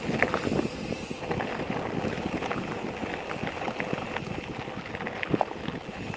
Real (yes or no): yes